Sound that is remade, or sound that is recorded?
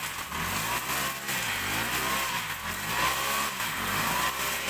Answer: recorded